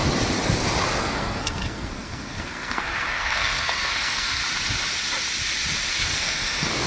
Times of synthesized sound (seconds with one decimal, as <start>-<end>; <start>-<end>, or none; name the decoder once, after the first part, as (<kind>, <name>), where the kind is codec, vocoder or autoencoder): 1.0-4.4 (codec, SNAC); 5.9-6.9